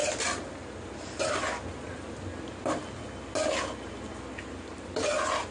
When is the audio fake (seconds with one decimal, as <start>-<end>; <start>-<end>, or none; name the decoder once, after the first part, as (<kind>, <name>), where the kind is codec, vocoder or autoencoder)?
none